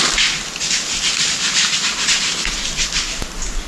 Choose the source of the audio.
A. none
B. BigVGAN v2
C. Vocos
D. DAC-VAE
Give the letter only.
A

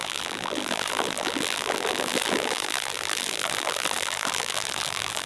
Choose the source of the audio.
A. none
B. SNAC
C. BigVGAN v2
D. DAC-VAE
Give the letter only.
C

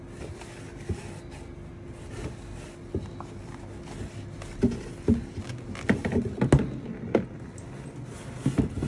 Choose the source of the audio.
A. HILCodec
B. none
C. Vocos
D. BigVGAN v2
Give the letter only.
B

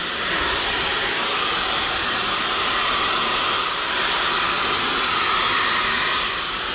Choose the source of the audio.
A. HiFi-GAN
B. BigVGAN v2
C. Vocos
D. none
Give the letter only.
B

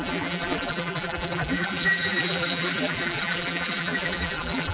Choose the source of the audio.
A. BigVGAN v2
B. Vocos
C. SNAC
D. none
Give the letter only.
A